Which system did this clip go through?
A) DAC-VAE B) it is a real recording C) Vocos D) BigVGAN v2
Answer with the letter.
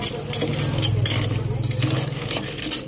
B